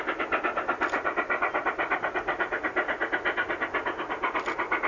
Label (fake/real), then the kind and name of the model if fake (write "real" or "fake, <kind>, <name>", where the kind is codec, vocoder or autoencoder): real